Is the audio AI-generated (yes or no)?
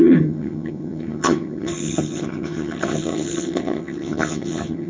yes